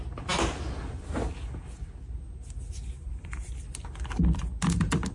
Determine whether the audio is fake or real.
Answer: real